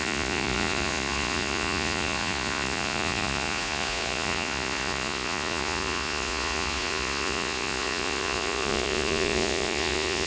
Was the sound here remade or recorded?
remade